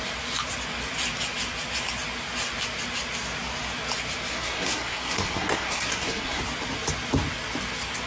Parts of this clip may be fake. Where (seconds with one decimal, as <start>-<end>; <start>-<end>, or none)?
4.3-6.4

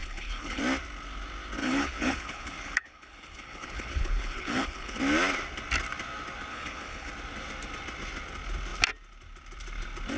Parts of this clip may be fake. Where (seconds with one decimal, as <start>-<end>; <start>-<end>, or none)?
0.0-0.6; 1.6-5.0; 6.5-7.1